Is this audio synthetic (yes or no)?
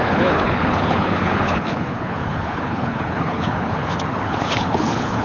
yes